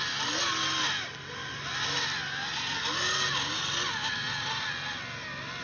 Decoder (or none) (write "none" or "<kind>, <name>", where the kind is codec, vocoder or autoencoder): none